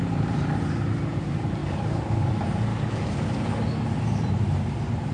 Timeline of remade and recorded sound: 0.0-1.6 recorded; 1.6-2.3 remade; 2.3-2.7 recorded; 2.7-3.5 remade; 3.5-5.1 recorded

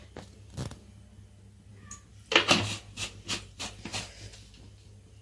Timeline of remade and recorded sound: 0.0-5.2 recorded

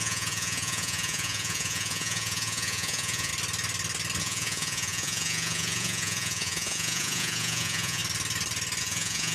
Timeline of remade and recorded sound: 0.0-3.3 remade; 3.3-4.2 recorded; 4.2-8.0 remade; 8.0-8.8 recorded; 8.8-9.3 remade

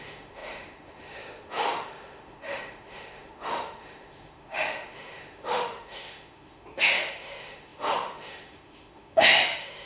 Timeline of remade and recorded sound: 0.0-9.9 remade

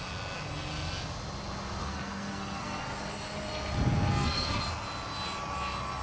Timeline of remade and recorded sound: 0.0-1.8 recorded; 1.8-2.8 remade; 2.8-4.1 recorded; 4.1-4.6 remade; 4.6-6.0 recorded

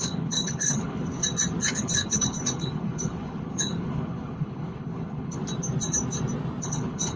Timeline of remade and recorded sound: 0.0-1.2 remade; 1.2-1.7 recorded; 1.7-5.4 remade; 5.4-6.6 recorded; 6.6-7.2 remade

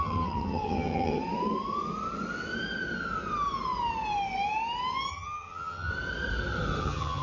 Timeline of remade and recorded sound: 0.0-1.2 remade; 1.2-5.1 recorded; 5.1-5.9 remade; 5.9-6.8 recorded; 6.8-7.2 remade

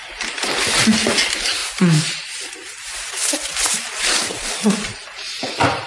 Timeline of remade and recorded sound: 0.0-0.8 remade; 0.8-3.2 recorded; 3.2-4.8 remade; 4.8-5.9 recorded